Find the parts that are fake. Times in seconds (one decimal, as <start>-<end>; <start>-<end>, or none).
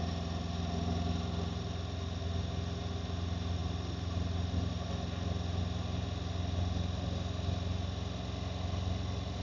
none